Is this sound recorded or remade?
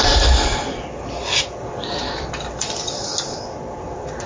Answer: remade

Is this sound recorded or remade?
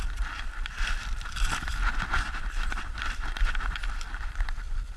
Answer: remade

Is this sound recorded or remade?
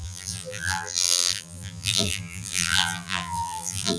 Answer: remade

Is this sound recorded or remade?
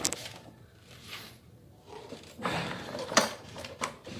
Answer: remade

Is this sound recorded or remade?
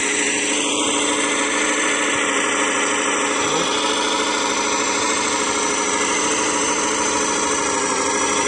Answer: remade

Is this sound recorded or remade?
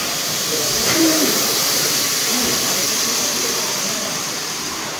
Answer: remade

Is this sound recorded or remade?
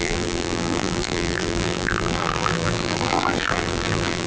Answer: remade